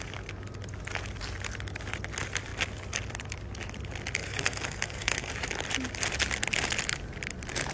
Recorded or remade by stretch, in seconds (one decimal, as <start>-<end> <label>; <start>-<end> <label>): 0.0-4.2 recorded; 4.2-5.3 remade; 5.3-7.7 recorded